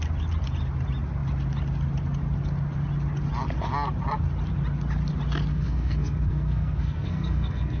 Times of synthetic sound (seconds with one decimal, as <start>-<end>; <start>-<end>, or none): 5.5-7.8